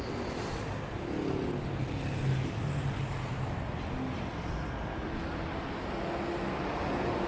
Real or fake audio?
real